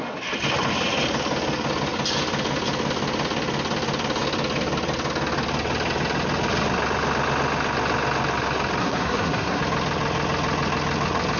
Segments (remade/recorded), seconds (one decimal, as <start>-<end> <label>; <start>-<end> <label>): 0.0-8.8 recorded; 8.8-9.6 remade; 9.6-11.4 recorded